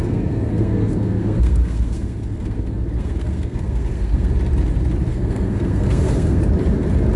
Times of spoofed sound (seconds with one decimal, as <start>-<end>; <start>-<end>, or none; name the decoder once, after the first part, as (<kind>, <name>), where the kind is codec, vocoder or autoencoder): 0.0-4.3 (codec, SNAC); 5.1-6.4